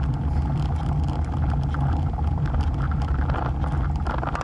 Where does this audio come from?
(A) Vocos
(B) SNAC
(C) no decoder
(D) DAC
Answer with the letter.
C